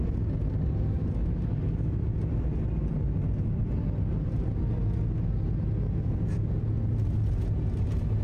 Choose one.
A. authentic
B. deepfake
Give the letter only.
A